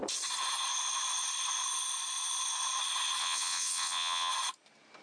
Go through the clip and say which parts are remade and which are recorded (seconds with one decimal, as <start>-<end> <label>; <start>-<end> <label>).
0.0-3.2 recorded; 3.2-4.3 remade; 4.3-5.0 recorded